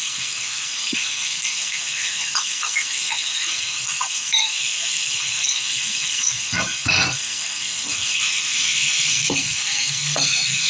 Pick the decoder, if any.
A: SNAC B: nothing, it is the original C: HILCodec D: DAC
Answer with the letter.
A